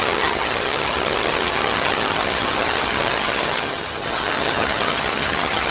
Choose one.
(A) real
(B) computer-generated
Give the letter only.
B